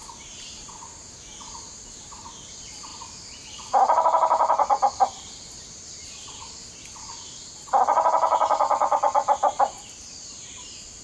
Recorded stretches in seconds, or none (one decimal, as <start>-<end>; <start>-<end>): 0.0-2.9; 6.9-11.0